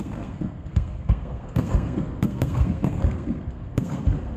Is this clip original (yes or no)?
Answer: no